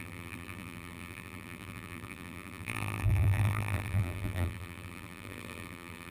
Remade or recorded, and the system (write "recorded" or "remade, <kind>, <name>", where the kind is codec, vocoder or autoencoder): remade, vocoder, BigVGAN v2